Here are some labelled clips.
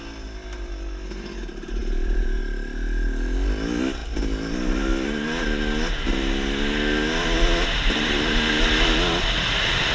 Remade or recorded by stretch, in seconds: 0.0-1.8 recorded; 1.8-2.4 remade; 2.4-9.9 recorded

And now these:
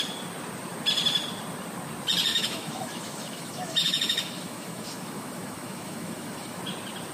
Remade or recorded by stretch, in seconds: 0.0-2.3 recorded; 2.3-6.6 remade; 6.6-7.1 recorded

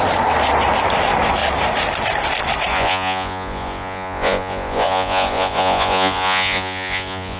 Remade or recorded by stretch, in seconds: 0.0-2.7 recorded; 2.7-7.4 remade

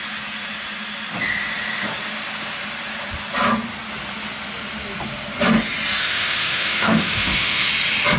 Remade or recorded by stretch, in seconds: 0.0-6.0 recorded; 6.0-7.7 remade; 7.7-8.2 recorded

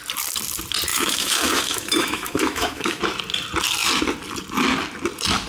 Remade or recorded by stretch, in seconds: 0.0-0.9 recorded; 0.9-3.0 remade; 3.0-5.5 recorded

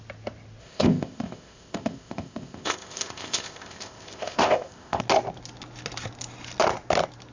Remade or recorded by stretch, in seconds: 0.0-0.6 recorded; 0.6-5.0 remade; 5.0-7.3 recorded

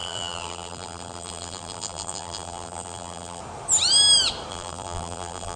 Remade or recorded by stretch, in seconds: 0.0-3.4 remade; 3.4-4.5 recorded; 4.5-5.6 remade